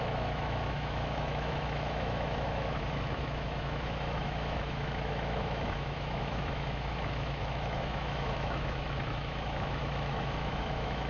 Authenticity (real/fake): fake